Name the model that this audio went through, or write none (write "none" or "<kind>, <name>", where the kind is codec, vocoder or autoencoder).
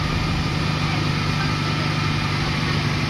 none